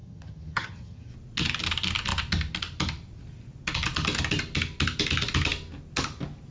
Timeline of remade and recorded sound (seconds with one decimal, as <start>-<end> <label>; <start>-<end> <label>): 0.0-1.1 remade; 1.1-6.5 recorded